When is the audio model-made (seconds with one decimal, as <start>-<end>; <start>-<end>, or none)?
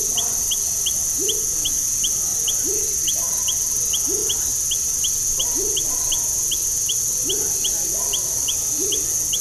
none